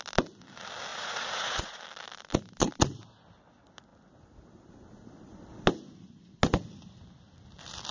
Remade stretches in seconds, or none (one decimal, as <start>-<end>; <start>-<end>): 0.9-1.8